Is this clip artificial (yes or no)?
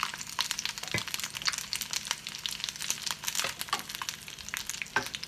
no